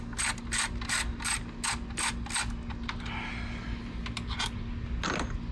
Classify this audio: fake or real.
real